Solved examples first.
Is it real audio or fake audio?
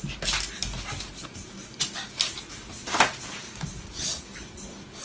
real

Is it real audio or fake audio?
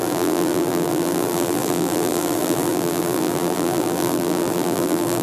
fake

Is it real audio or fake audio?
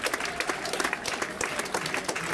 fake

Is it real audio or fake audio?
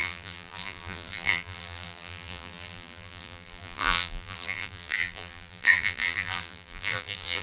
fake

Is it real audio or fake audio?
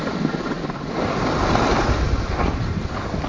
real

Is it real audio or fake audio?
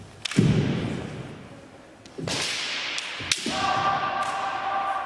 real